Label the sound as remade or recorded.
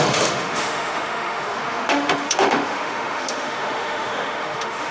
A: remade